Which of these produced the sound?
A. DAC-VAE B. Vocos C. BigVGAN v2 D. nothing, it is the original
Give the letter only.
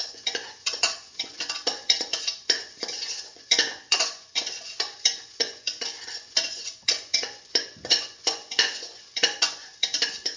B